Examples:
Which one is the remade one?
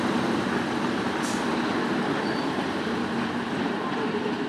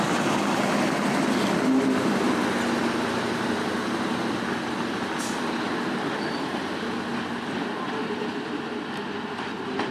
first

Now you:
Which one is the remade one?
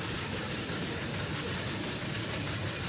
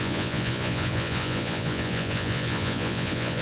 second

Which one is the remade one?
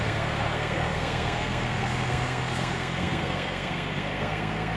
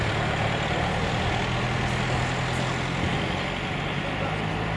first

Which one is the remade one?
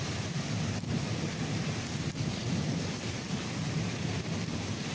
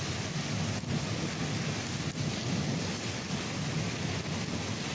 first